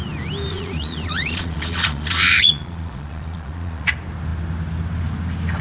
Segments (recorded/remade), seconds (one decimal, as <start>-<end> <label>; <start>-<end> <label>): 0.0-0.5 recorded; 0.5-3.9 remade; 3.9-5.6 recorded